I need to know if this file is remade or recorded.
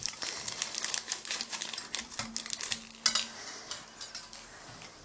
recorded